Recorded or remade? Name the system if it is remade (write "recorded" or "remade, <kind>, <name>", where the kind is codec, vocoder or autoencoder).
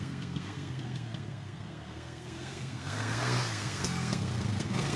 remade, codec, SNAC